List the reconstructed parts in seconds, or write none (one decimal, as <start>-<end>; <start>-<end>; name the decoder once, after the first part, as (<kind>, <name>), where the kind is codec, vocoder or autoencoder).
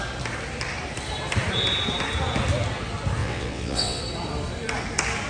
3.2-4.0 (vocoder, WaveNeXt)